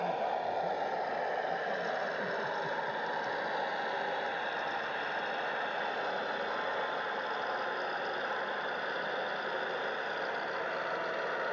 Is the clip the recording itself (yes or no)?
yes